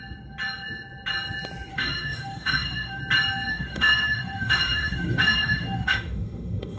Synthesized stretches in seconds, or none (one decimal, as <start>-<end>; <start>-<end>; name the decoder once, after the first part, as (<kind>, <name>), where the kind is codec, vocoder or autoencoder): 1.7-3.0 (autoencoder, DAC-VAE); 3.5-6.8